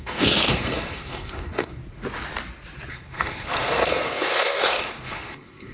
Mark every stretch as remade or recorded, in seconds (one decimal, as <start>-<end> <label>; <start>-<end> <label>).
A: 0.0-1.8 remade; 1.8-2.9 recorded; 2.9-5.7 remade